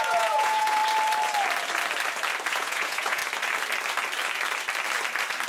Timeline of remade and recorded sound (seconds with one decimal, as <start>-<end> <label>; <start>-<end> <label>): 0.0-0.8 remade; 0.8-2.5 recorded; 2.5-3.2 remade; 3.2-5.5 recorded